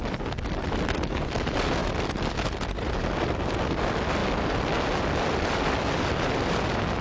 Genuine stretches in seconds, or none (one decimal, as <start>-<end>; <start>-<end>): 0.0-7.0